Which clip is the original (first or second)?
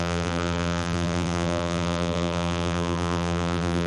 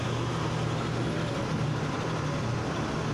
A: second